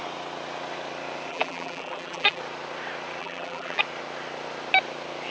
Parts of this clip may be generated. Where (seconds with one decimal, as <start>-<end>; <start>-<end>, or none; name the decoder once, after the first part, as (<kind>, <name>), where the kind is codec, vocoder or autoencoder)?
1.3-2.4 (vocoder, BigVGAN v2); 3.2-3.8